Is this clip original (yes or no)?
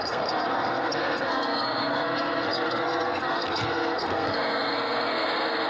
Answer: no